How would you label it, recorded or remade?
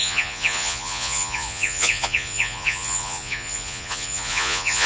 remade